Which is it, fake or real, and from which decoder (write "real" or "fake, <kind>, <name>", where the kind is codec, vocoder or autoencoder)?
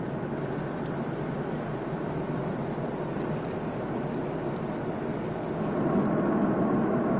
real